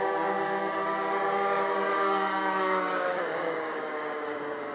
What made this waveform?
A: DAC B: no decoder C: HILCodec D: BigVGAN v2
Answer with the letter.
A